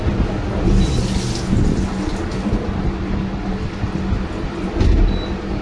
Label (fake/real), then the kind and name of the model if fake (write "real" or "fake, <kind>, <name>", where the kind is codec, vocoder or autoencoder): real